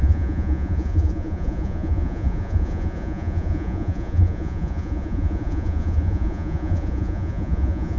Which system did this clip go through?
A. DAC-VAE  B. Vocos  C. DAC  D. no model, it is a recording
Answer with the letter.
B